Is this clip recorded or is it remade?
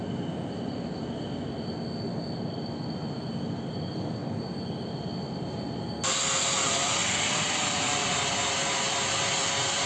recorded